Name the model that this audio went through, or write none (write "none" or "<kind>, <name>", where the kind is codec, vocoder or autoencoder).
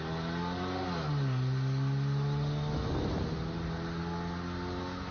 none